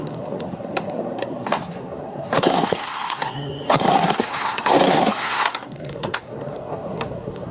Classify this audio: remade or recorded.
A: remade